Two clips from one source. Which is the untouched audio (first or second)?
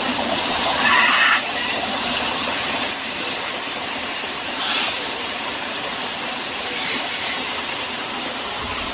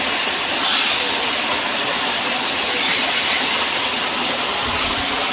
second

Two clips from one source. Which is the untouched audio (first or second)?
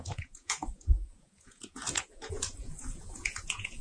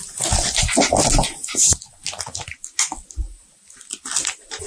second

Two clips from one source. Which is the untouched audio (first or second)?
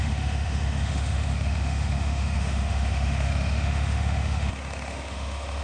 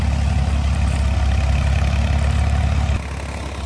second